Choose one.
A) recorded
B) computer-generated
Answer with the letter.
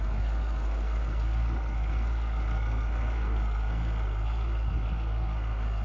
B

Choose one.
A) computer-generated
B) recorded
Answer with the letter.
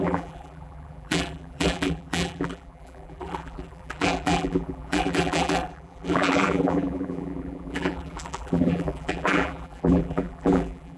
A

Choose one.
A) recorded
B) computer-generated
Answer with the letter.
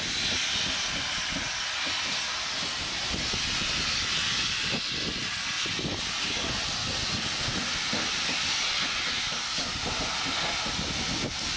A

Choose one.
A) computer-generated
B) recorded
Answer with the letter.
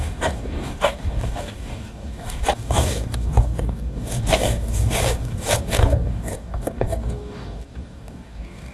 A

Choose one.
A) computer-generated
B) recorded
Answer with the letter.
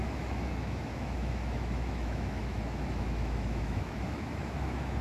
A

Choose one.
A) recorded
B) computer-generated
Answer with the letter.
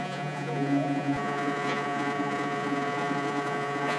B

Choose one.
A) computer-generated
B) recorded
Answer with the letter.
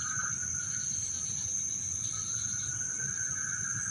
B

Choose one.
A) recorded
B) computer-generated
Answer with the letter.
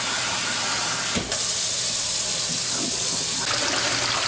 A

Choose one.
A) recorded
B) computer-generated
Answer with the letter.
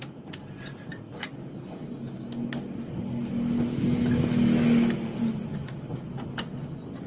A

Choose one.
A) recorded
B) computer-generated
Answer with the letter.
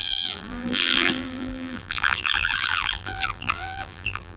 B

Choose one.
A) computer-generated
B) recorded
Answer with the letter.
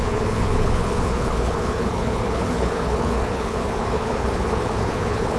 A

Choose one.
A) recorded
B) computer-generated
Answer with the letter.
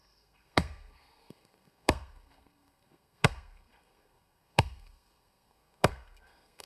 B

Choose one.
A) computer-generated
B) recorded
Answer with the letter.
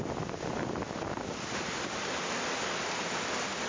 B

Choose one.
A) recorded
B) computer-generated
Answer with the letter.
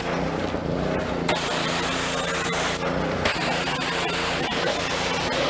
A